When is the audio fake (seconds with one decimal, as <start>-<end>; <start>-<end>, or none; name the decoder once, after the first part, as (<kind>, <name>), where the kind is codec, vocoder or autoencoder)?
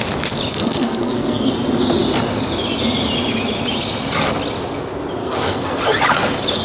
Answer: 0.5-1.5 (codec, SNAC); 5.2-5.8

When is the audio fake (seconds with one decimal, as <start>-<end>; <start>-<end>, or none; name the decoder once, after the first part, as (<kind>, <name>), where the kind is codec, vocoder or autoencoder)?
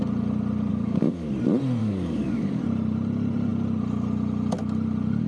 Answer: 0.7-1.3 (codec, DAC); 1.8-2.6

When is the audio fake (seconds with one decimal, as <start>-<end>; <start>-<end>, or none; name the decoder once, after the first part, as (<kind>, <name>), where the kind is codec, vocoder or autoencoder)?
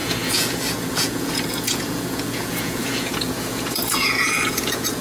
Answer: 0.0-5.0 (vocoder, Vocos)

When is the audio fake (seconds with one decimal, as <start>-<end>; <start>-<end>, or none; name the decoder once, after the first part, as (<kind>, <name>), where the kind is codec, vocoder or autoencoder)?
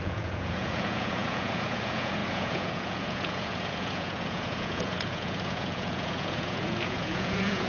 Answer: 0.0-7.7 (vocoder, Vocos)